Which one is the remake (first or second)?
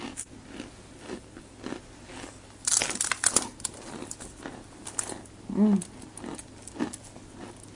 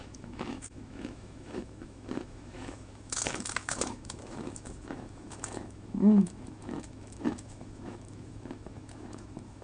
second